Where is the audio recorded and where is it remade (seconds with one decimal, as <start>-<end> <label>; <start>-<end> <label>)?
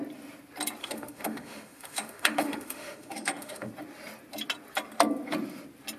0.0-0.8 recorded; 0.8-3.7 remade; 3.7-6.0 recorded